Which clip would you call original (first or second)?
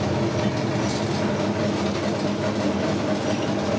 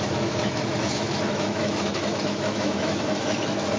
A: first